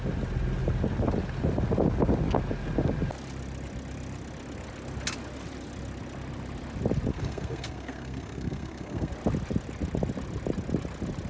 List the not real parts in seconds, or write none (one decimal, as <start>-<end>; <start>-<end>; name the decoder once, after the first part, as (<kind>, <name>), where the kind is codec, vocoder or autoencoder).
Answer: 7.1-9.1 (codec, SNAC)